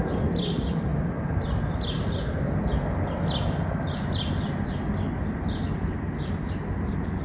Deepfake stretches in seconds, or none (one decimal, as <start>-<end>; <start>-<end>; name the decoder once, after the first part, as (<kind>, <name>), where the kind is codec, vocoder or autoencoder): none